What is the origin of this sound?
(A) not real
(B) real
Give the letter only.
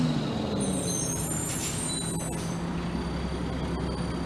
B